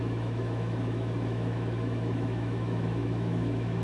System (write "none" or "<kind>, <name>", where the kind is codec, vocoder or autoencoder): autoencoder, DAC-VAE